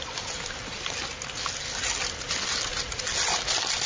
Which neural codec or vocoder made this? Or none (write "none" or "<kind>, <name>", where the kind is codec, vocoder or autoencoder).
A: none